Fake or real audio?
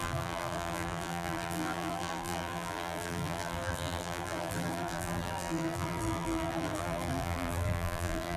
fake